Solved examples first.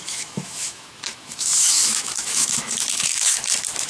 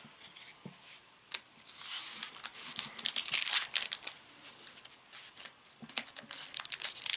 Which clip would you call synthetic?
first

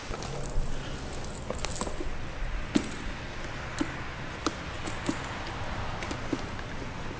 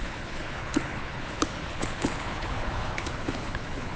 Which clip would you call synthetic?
second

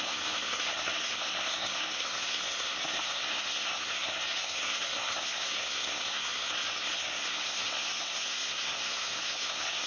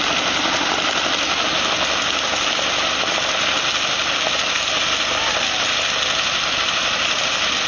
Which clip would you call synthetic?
first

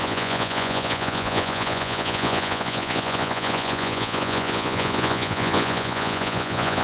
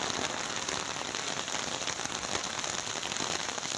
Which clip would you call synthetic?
first